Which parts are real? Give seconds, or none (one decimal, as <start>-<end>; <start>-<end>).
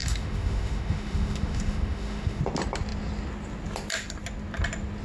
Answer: 2.4-5.0